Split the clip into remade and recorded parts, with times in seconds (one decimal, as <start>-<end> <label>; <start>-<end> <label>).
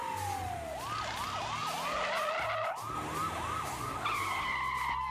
0.0-5.1 recorded